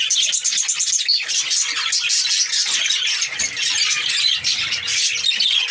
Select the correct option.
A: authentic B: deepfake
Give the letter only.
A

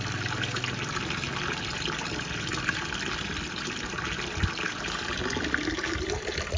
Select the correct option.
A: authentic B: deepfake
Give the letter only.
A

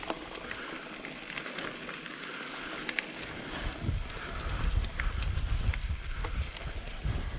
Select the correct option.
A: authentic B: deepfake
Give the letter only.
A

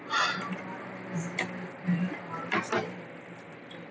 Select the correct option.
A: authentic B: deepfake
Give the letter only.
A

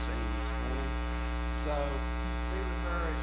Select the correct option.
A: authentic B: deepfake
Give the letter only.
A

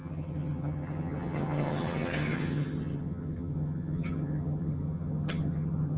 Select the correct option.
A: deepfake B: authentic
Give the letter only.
A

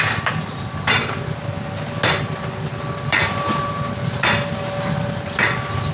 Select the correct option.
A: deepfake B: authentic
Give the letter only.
B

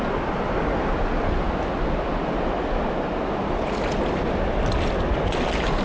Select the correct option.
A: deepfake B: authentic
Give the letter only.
B